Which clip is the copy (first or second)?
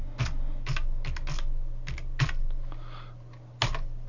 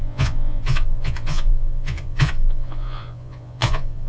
second